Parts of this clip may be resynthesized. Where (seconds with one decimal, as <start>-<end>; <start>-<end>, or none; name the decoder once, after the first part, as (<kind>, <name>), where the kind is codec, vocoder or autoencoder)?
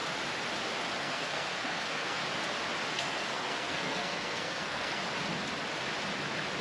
1.0-2.2 (codec, SNAC); 2.9-5.0